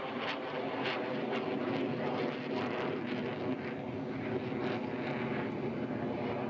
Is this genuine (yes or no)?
yes